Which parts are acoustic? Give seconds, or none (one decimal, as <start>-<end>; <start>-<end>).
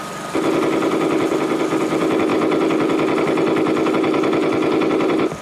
0.0-5.4